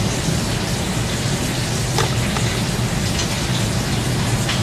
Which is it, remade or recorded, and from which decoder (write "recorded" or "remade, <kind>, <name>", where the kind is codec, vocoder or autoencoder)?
recorded